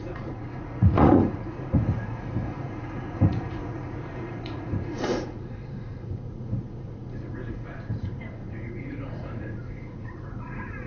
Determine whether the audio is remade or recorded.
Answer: remade